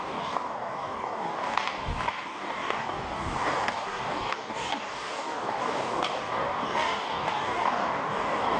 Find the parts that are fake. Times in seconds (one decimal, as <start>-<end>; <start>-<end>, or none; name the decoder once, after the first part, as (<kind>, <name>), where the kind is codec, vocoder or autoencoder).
0.0-8.6 (codec, DAC)